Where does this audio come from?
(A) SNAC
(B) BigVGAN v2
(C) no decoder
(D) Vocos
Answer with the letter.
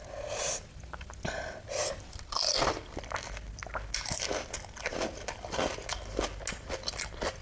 C